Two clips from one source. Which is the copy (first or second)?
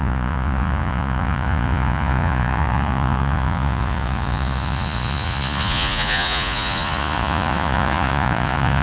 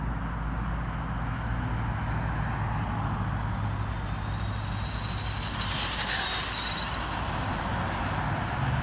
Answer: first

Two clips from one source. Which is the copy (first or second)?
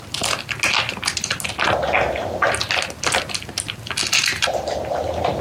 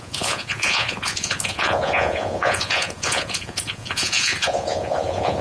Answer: second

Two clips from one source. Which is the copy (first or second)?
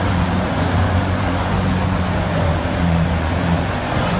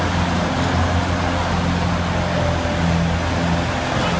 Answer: first